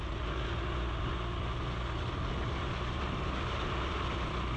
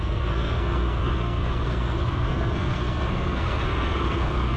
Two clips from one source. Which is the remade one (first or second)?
second